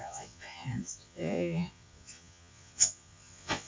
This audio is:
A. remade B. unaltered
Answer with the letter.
A